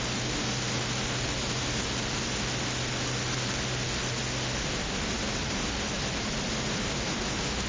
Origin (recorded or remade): recorded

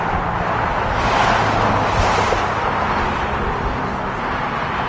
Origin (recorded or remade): recorded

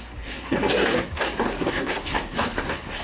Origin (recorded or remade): remade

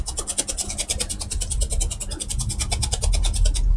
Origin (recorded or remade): recorded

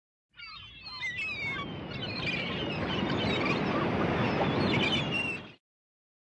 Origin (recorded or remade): recorded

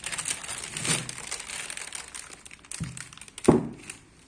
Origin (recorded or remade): recorded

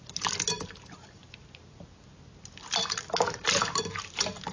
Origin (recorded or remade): recorded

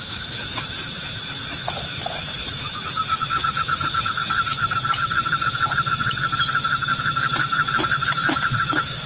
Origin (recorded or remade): remade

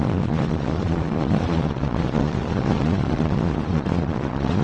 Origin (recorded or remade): remade